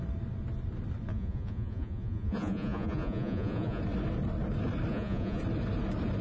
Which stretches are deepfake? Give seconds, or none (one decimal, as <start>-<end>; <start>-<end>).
1.1-3.8; 4.9-5.4